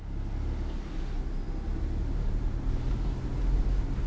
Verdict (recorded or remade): recorded